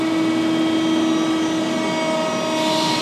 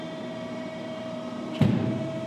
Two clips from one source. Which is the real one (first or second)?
first